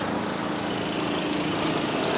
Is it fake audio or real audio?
real